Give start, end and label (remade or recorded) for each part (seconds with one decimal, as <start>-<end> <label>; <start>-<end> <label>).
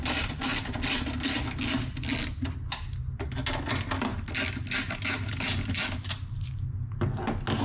0.0-7.6 recorded